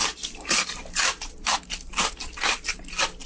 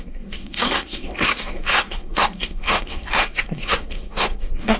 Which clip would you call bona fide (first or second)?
first